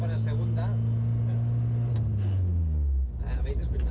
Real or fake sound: real